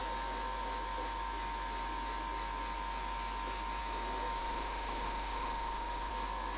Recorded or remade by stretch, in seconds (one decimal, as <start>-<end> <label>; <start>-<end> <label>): 0.0-4.4 recorded; 4.4-6.1 remade; 6.1-6.6 recorded